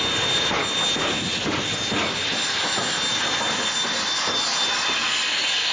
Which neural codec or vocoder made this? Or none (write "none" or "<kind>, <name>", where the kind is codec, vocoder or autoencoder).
none